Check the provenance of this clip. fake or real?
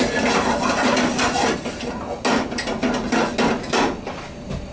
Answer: real